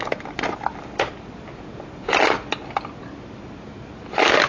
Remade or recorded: recorded